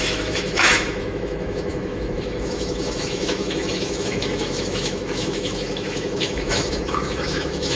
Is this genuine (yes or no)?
no